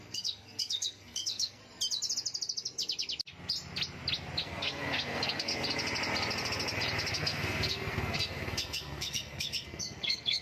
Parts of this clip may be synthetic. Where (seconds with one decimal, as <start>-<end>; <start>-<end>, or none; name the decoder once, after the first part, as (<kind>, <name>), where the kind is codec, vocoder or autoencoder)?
0.0-1.6 (codec, SNAC); 4.4-5.5; 7.1-10.4